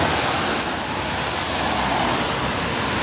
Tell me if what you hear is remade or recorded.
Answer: recorded